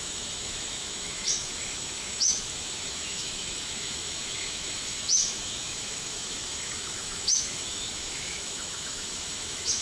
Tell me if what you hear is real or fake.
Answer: fake